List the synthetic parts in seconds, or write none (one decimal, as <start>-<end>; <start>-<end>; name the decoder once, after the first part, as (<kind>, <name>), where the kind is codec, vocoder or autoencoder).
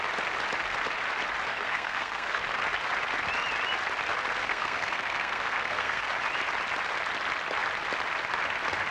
1.5-2.4 (codec, SNAC); 4.4-6.0